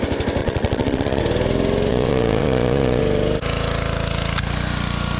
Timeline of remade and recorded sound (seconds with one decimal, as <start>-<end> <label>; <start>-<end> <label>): 0.0-0.4 recorded; 0.4-1.2 remade; 1.2-1.9 recorded; 1.9-3.0 remade; 3.0-5.2 recorded

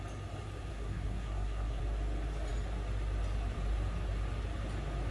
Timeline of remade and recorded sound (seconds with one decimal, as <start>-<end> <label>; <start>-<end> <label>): 0.0-0.7 recorded; 0.7-1.8 remade; 1.8-5.1 recorded

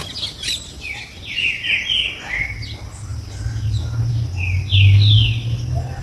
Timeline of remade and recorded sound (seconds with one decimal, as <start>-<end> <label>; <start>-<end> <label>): 0.0-6.0 recorded

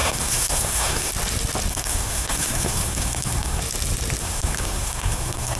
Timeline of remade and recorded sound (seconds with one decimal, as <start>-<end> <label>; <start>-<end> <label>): 0.0-1.1 remade; 1.1-1.7 recorded; 1.7-3.6 remade; 3.6-4.2 recorded; 4.2-5.6 remade

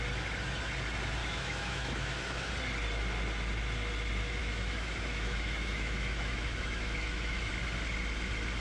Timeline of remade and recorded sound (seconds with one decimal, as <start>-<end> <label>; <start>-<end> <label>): 0.0-1.2 recorded; 1.2-2.5 remade; 2.5-4.4 recorded; 4.4-7.5 remade; 7.5-8.6 recorded

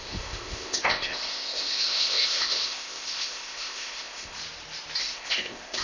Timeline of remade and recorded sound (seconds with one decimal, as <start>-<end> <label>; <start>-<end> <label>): 0.0-4.4 remade; 4.4-5.0 recorded; 5.0-5.8 remade

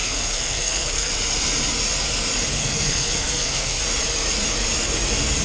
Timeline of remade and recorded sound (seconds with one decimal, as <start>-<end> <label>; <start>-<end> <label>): 0.0-1.1 remade; 1.1-2.6 recorded; 2.6-3.8 remade; 3.8-5.4 recorded